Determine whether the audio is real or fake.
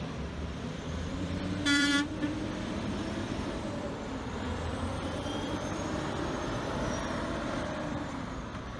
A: fake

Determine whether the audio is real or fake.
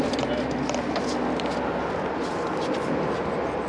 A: real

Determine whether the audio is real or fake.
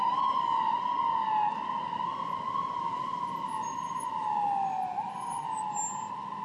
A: real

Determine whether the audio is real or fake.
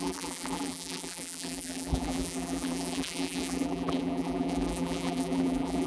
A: fake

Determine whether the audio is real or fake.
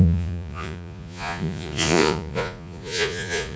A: fake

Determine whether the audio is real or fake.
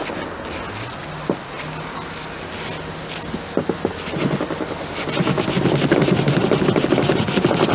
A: real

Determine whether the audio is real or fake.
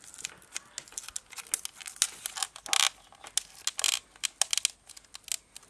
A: real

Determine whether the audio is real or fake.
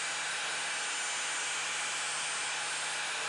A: real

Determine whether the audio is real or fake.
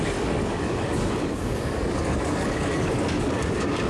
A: fake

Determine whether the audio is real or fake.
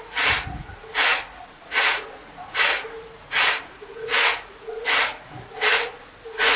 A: fake